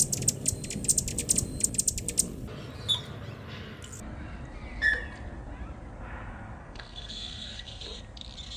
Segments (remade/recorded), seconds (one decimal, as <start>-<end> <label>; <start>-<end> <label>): 0.0-6.6 recorded; 6.6-8.0 remade; 8.0-8.6 recorded